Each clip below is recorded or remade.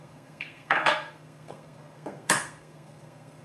remade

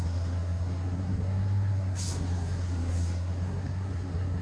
remade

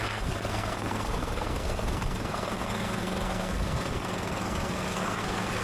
remade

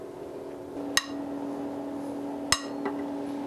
recorded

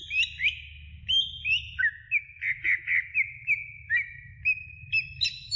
recorded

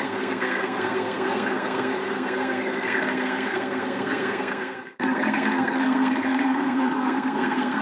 remade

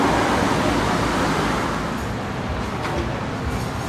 recorded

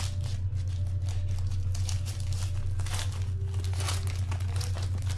recorded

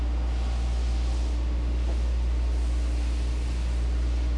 recorded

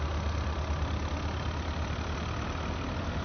recorded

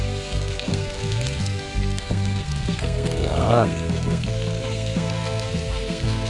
remade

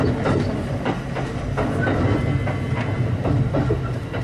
recorded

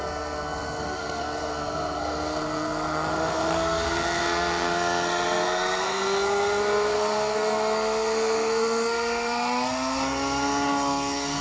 remade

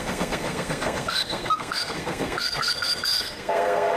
remade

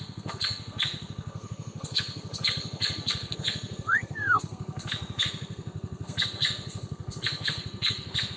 remade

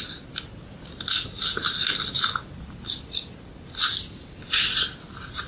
recorded